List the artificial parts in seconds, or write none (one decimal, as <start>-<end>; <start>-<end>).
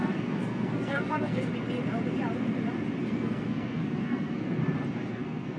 0.0-1.5; 3.0-4.6; 5.1-5.6